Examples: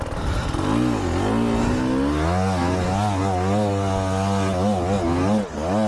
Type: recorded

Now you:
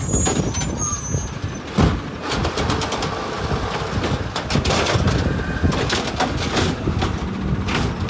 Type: recorded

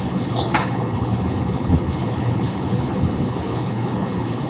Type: remade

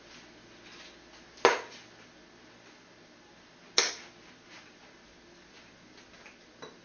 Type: recorded